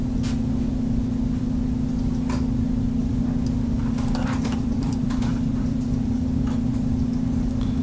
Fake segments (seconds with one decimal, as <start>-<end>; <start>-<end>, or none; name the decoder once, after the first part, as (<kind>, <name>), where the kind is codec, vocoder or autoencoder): 3.0-7.8 (vocoder, BigVGAN v2)